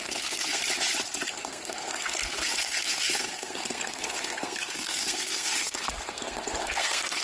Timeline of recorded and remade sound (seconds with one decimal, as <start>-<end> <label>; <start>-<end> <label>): 0.0-0.6 remade; 0.6-1.3 recorded; 1.3-7.2 remade